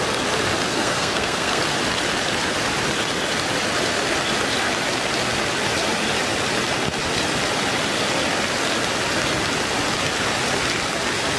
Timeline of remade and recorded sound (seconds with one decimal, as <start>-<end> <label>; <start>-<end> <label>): 0.0-0.7 recorded; 0.7-1.6 remade; 1.6-11.4 recorded